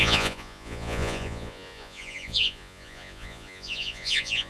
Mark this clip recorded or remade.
remade